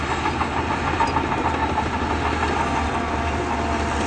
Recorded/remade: recorded